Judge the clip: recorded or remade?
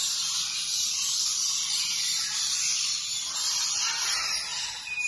recorded